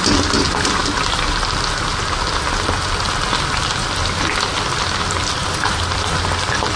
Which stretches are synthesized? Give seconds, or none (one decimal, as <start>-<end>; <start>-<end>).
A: 5.4-6.1